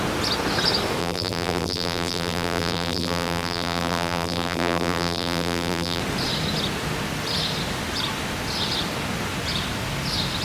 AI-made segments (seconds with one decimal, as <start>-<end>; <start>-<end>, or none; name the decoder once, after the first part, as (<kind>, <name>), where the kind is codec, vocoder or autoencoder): 1.0-6.0 (vocoder, BigVGAN v2)